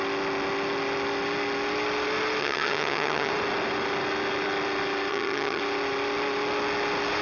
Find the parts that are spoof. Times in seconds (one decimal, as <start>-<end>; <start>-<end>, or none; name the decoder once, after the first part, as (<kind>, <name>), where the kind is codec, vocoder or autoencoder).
2.4-3.3 (vocoder, HiFi-GAN); 5.1-5.6